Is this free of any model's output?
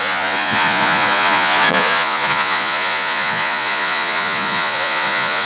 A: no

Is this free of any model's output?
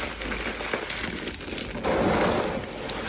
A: yes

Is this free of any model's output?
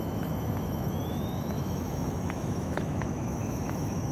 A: no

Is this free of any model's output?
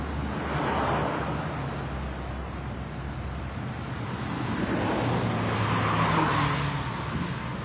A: yes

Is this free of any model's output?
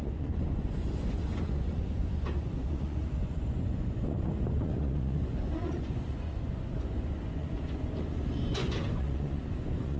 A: no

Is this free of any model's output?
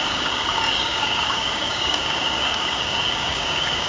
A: no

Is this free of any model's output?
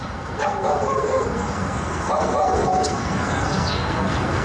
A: no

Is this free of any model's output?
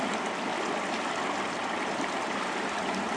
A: yes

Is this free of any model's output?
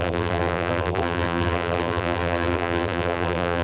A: no